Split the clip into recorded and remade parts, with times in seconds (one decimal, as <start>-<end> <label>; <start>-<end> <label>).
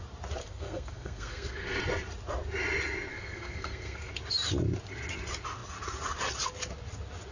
0.0-0.4 recorded; 0.4-1.8 remade; 1.8-3.1 recorded; 3.1-4.1 remade; 4.1-7.3 recorded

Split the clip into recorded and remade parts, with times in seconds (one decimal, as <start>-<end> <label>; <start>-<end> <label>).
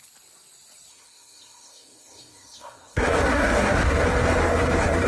0.0-0.9 recorded; 0.9-4.0 remade; 4.0-4.4 recorded; 4.4-5.1 remade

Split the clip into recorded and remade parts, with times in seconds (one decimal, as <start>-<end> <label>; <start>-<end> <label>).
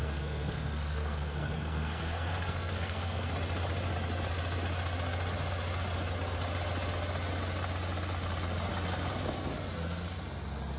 0.0-3.3 remade; 3.3-10.8 recorded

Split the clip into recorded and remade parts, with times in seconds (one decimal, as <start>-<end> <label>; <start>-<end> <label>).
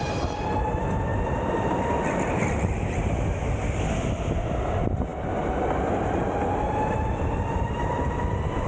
0.0-8.7 recorded